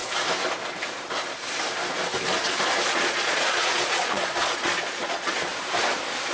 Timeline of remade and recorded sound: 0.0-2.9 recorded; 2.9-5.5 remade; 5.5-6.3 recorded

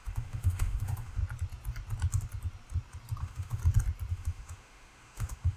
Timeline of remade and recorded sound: 0.0-1.2 remade; 1.2-3.2 recorded; 3.2-3.6 remade; 3.6-4.1 recorded; 4.1-5.6 remade

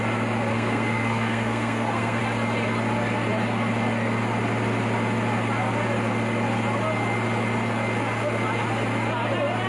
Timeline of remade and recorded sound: 0.0-0.5 recorded; 0.5-2.2 remade; 2.2-9.7 recorded

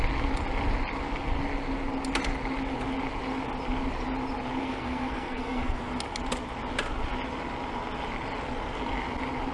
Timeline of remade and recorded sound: 0.0-4.6 recorded; 4.6-5.8 remade; 5.8-9.5 recorded

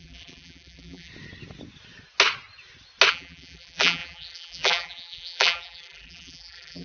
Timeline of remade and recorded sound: 0.0-1.1 remade; 1.1-3.1 recorded; 3.1-6.8 remade

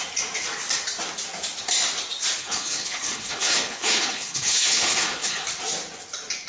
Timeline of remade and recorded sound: 0.0-2.4 recorded; 2.4-5.4 remade; 5.4-6.5 recorded

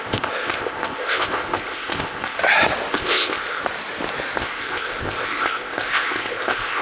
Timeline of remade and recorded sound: 0.0-2.4 remade; 2.4-2.9 recorded; 2.9-3.6 remade; 3.6-4.4 recorded; 4.4-6.8 remade

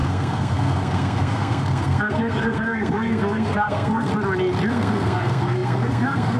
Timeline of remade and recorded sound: 0.0-4.1 remade; 4.1-4.7 recorded; 4.7-6.4 remade